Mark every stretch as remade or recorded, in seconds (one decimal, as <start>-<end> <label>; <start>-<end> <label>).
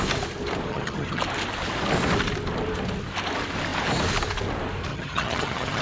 0.0-0.7 recorded; 0.7-1.2 remade; 1.2-4.9 recorded; 4.9-5.8 remade